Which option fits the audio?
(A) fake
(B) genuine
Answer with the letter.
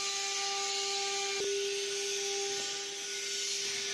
B